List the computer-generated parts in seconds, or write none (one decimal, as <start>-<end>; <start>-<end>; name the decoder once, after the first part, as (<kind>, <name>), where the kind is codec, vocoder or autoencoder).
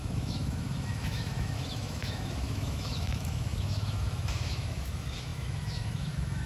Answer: 0.0-6.5 (autoencoder, DAC-VAE)